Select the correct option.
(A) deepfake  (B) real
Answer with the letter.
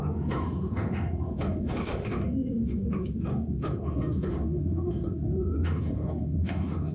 A